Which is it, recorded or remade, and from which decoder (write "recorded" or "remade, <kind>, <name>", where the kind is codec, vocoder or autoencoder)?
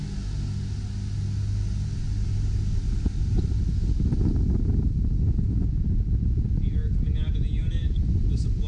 recorded